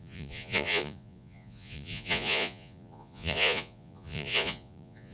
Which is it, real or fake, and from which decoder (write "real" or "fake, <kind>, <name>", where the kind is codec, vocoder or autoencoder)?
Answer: fake, vocoder, Vocos